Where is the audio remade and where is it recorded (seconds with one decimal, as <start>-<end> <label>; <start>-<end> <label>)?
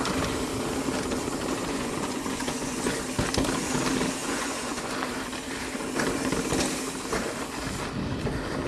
0.0-1.6 recorded; 1.6-3.0 remade; 3.0-4.2 recorded; 4.2-4.9 remade; 4.9-8.7 recorded